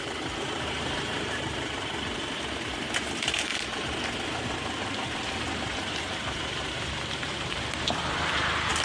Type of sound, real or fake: fake